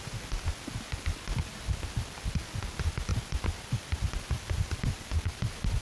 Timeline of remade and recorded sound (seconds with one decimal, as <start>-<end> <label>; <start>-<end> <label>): 0.0-5.8 recorded